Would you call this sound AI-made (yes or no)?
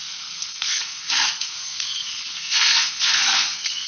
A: yes